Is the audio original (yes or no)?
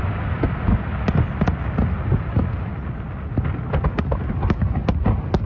yes